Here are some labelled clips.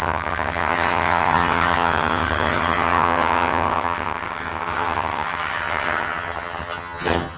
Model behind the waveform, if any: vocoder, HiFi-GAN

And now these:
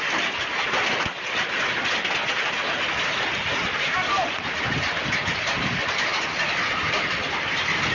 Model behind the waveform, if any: none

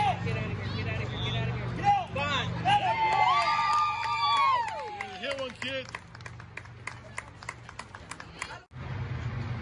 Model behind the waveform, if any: none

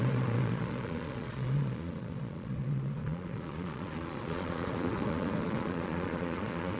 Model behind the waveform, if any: vocoder, Vocos